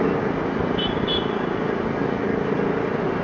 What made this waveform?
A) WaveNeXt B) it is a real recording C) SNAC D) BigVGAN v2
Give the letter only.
B